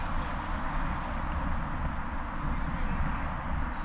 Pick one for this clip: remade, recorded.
recorded